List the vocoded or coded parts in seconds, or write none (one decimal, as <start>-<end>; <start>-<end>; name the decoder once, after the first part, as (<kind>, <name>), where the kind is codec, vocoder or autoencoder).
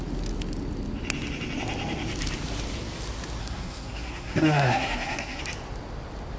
3.4-5.4 (codec, SNAC)